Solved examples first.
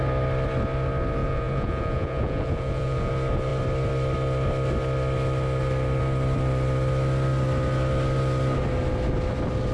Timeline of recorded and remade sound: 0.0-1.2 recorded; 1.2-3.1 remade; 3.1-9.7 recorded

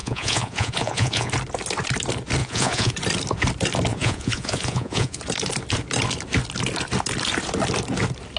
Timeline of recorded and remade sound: 0.0-1.3 remade; 1.3-2.4 recorded; 2.4-2.9 remade; 2.9-3.9 recorded; 3.9-5.2 remade; 5.2-8.4 recorded

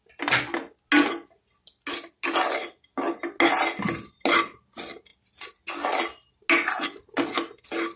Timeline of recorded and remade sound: 0.0-8.0 recorded

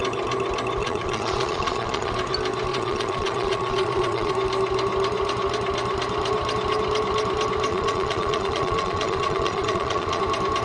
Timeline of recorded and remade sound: 0.0-0.8 recorded; 0.8-2.1 remade; 2.1-2.7 recorded; 2.7-4.3 remade; 4.3-7.7 recorded; 7.7-10.2 remade; 10.2-10.6 recorded